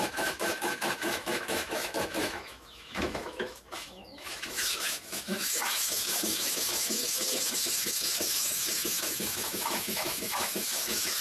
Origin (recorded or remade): remade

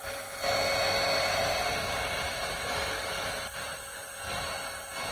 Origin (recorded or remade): recorded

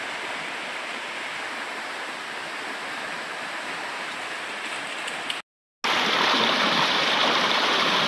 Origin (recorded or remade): recorded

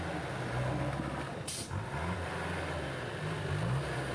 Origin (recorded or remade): recorded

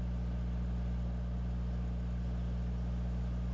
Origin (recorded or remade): recorded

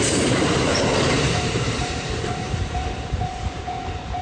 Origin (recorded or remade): remade